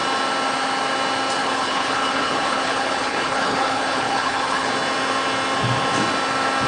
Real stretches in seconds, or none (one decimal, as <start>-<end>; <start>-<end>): 0.0-1.4; 4.7-6.7

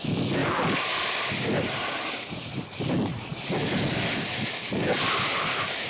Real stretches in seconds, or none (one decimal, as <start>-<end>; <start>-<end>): 0.0-0.4; 1.3-5.9

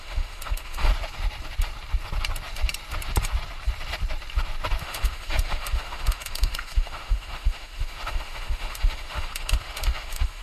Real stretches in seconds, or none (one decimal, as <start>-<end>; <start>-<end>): 0.9-4.8

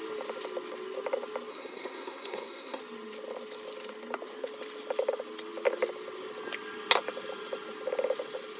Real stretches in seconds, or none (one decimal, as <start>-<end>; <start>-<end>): 0.0-1.5; 2.8-8.6

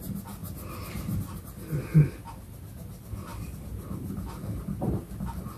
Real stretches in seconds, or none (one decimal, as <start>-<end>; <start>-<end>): 0.0-5.6

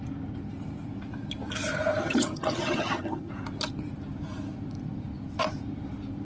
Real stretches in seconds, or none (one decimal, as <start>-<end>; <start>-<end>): 0.0-2.0; 3.3-6.2